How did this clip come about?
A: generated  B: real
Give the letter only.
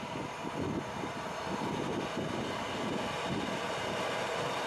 B